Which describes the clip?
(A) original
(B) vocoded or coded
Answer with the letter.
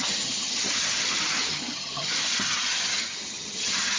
B